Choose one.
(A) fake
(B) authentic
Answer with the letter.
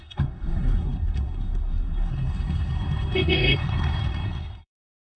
A